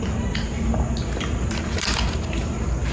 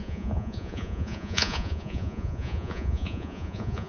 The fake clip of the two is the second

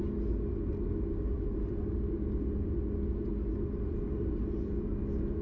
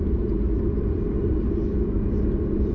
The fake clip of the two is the second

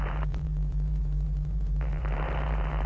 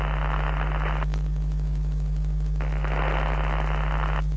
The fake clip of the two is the first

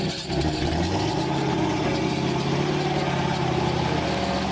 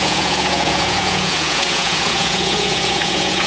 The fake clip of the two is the second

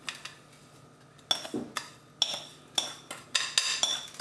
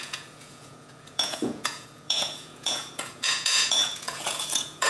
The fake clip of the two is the second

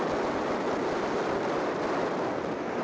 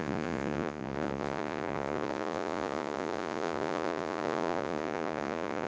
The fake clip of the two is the second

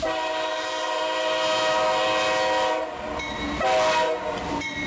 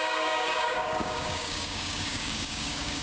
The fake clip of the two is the second